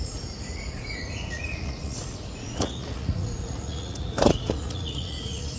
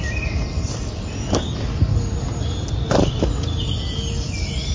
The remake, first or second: first